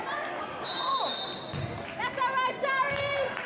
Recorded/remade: recorded